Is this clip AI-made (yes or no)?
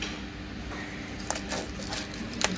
no